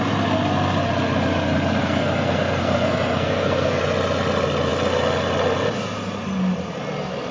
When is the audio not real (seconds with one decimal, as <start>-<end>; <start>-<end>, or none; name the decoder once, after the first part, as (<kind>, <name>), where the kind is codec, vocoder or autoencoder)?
1.8-3.8 (codec, SNAC)